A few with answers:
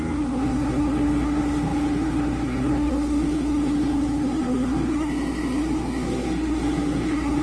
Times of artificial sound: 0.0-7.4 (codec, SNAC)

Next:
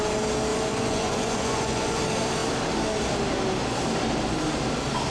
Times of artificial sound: 0.5-2.0 (vocoder, Vocos)

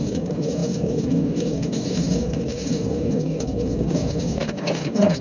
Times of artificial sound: 0.0-5.2 (codec, DAC)

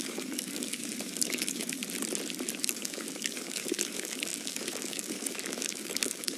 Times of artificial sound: 0.0-1.8 (codec, DAC); 2.6-6.4

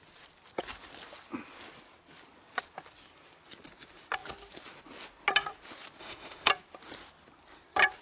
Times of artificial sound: 6.0-6.5 (autoencoder, DAC-VAE)

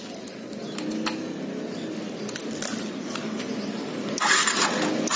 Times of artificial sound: none

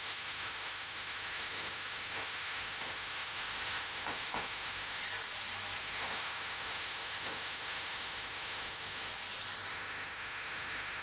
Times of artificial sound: 0.0-5.0 (autoencoder, DAC-VAE); 5.8-9.1; 9.7-11.0